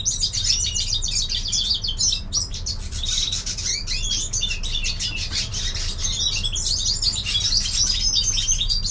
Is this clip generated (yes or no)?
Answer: no